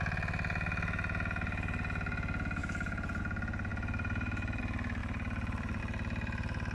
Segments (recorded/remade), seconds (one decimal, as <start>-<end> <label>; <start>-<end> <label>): 0.0-2.6 recorded; 2.6-3.2 remade; 3.2-3.7 recorded; 3.7-4.6 remade; 4.6-5.0 recorded; 5.0-5.8 remade; 5.8-6.7 recorded